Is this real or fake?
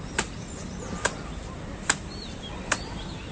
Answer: real